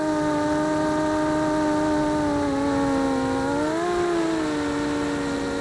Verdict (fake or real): real